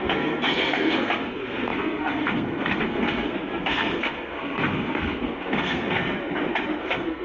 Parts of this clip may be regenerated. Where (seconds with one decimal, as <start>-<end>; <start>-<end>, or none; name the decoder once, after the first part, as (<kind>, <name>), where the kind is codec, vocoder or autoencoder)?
0.0-6.0 (codec, SNAC); 6.8-7.2